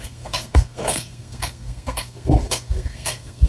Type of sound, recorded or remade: remade